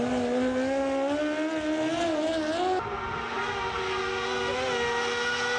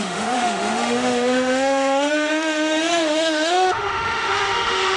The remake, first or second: second